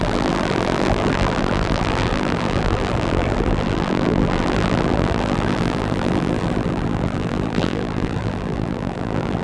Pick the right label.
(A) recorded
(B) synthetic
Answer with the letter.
B